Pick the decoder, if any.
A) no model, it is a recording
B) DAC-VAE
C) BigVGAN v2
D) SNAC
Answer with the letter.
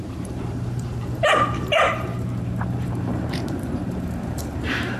C